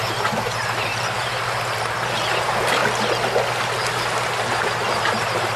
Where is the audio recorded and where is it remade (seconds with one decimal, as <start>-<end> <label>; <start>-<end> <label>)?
0.0-2.8 remade; 2.8-4.9 recorded; 4.9-5.6 remade